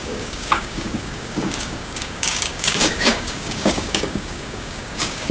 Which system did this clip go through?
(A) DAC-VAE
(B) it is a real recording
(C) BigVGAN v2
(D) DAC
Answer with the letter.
D